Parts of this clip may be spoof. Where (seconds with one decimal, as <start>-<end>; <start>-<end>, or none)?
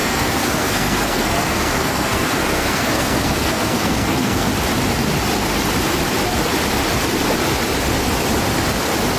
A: 0.0-4.5